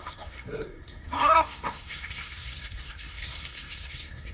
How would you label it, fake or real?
fake